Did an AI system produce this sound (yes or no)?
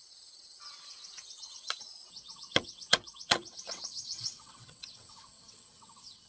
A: yes